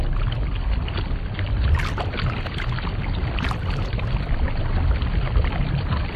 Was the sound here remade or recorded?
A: recorded